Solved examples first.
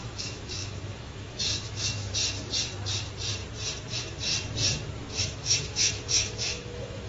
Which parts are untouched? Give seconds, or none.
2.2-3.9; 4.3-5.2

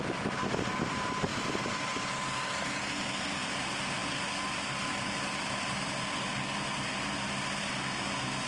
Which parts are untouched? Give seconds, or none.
0.0-8.5